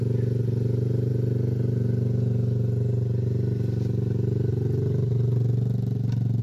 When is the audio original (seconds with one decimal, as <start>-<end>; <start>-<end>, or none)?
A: 0.0-6.4